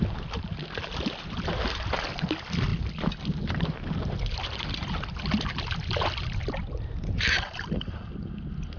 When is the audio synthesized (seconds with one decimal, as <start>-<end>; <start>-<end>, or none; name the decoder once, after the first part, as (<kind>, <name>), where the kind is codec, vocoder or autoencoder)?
none